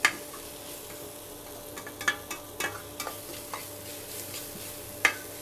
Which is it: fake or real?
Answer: real